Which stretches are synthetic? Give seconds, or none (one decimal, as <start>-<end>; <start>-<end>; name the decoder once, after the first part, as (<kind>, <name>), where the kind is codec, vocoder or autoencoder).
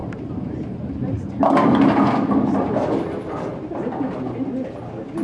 0.0-1.3 (vocoder, BigVGAN v2)